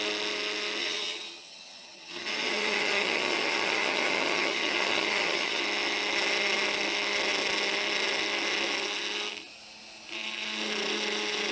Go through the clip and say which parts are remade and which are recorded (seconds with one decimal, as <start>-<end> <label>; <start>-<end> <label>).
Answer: 0.0-0.8 recorded; 0.8-5.6 remade; 5.6-11.5 recorded